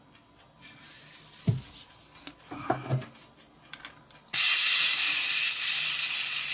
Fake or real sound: real